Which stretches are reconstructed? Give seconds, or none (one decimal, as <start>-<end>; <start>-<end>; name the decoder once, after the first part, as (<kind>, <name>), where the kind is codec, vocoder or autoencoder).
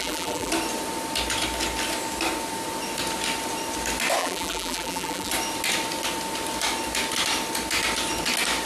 0.0-0.5 (vocoder, BigVGAN v2); 4.2-5.3